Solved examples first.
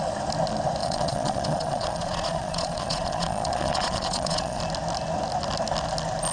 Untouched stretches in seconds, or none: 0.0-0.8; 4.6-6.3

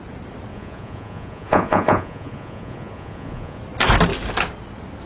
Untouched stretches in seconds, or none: 0.0-0.5; 3.6-5.1

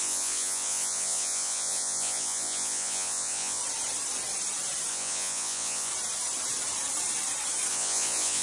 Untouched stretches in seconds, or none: 3.6-4.9; 5.9-7.7

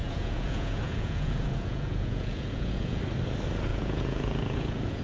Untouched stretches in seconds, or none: 3.0-3.7

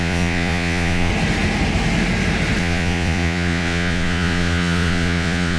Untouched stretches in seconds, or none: 1.1-2.6